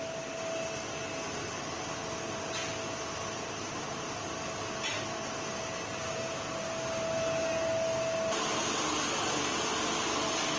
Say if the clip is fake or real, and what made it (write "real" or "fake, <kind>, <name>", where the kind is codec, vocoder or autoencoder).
real